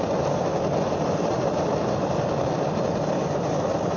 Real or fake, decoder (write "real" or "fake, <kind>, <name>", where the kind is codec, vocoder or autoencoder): real